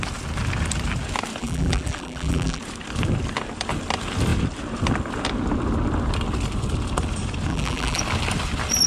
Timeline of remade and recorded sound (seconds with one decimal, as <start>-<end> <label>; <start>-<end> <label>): 0.0-1.4 recorded; 1.4-2.6 remade; 2.6-7.5 recorded; 7.5-8.0 remade; 8.0-8.9 recorded